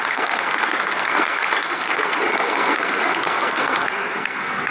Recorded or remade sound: remade